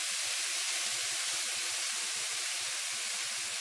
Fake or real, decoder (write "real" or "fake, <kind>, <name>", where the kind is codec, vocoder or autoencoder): real